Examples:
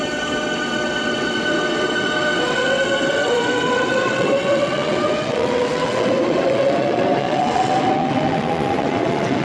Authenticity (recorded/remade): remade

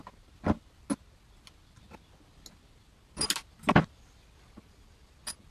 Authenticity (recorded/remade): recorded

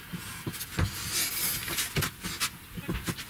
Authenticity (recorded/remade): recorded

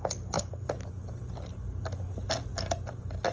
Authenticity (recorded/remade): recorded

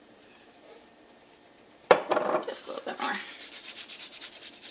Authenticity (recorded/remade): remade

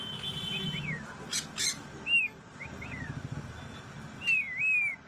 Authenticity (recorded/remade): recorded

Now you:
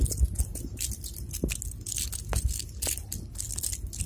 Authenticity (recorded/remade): recorded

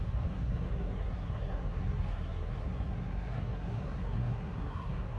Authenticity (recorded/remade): remade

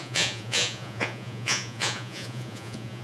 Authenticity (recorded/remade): remade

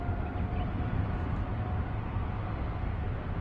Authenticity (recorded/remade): recorded